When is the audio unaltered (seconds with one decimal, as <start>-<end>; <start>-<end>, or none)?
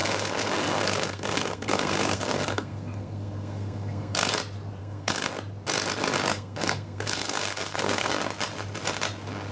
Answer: 4.3-4.8; 5.3-6.3; 8.1-9.5